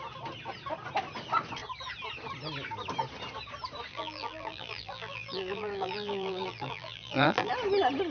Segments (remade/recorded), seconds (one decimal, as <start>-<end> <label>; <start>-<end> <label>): 0.0-3.9 recorded; 3.9-7.5 remade; 7.5-8.1 recorded